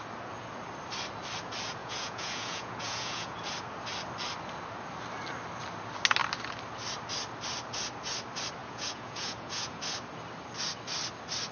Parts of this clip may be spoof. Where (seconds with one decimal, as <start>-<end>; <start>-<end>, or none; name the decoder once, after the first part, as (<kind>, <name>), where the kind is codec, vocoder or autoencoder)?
1.8-3.5 (vocoder, Vocos); 8.6-9.8

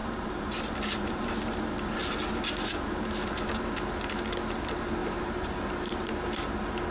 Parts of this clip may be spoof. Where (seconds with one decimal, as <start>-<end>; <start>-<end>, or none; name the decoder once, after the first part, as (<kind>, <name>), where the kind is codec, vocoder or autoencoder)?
0.0-1.3 (vocoder, BigVGAN v2); 5.0-6.5

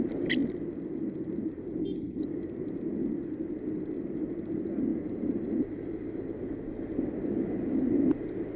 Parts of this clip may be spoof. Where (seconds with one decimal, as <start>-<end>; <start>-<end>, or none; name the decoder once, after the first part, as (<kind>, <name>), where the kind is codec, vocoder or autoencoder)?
4.9-6.3 (vocoder, BigVGAN v2)

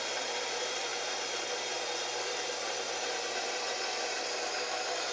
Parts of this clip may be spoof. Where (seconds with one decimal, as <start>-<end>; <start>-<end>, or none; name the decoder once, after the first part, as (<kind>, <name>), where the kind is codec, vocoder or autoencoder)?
none

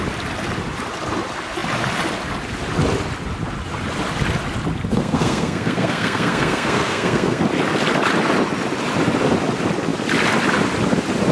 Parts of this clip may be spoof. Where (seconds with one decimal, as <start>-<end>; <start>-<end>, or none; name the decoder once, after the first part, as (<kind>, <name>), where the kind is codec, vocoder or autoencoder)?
4.9-7.4 (codec, SNAC)

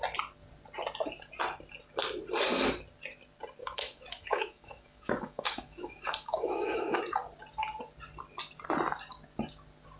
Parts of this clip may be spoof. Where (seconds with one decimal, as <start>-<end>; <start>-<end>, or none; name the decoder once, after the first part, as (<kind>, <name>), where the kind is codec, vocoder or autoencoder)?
3.6-7.0 (autoencoder, DAC-VAE)